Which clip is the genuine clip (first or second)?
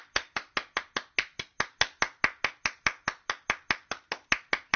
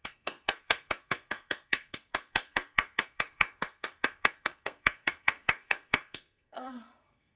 first